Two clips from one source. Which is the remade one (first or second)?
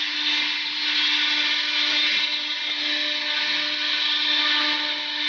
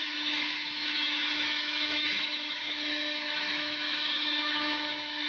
second